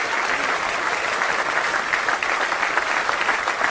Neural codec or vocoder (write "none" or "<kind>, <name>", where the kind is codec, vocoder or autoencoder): none